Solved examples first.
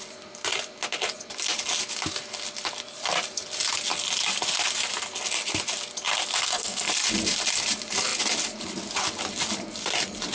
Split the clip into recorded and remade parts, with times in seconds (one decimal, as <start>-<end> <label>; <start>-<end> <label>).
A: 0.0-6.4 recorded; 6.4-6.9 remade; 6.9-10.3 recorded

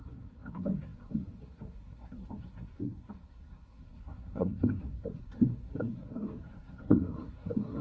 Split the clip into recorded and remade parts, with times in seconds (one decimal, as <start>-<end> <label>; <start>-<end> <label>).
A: 0.0-7.8 remade

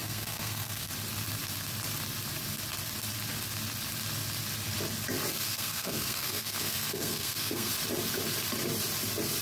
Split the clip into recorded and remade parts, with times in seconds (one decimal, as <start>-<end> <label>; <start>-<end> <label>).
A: 0.0-0.9 remade; 0.9-5.3 recorded; 5.3-7.7 remade; 7.7-9.4 recorded

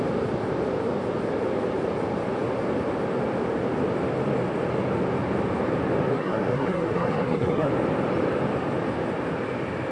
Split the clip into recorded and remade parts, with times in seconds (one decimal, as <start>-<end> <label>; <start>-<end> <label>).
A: 0.0-6.1 recorded; 6.1-7.7 remade; 7.7-9.9 recorded